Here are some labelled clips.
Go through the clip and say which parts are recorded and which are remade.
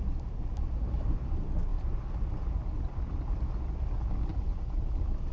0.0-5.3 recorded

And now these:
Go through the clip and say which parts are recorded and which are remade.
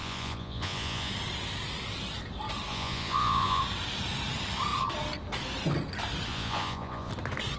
0.0-1.1 remade; 1.1-2.7 recorded; 2.7-3.6 remade; 3.6-6.3 recorded; 6.3-7.1 remade; 7.1-7.6 recorded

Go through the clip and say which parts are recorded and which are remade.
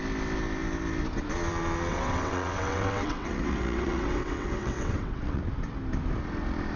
0.0-1.9 recorded; 1.9-5.4 remade; 5.4-6.8 recorded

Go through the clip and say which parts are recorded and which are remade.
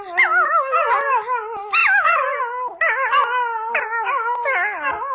0.0-1.8 recorded; 1.8-2.4 remade; 2.4-5.1 recorded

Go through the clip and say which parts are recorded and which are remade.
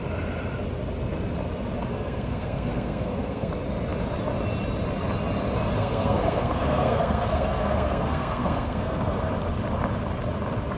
0.0-1.9 recorded; 1.9-3.5 remade; 3.5-5.8 recorded; 5.8-9.3 remade; 9.3-10.8 recorded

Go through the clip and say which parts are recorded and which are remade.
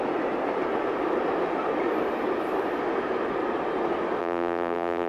0.0-4.2 recorded; 4.2-5.1 remade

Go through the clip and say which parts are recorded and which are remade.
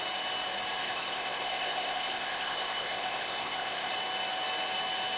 0.0-0.8 recorded; 0.8-3.9 remade; 3.9-5.2 recorded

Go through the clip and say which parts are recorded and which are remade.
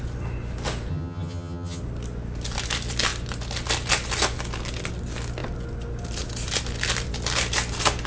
0.0-0.9 recorded; 0.9-1.8 remade; 1.8-8.1 recorded